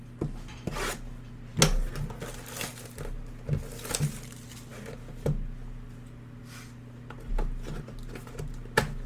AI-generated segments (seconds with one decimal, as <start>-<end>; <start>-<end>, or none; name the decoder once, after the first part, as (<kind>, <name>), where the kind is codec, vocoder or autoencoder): none